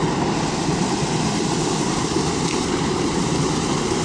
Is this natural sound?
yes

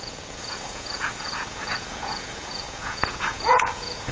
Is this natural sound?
no